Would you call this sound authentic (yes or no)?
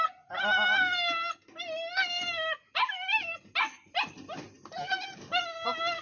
yes